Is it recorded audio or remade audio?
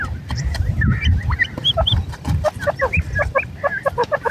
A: recorded